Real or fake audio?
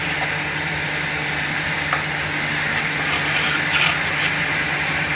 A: real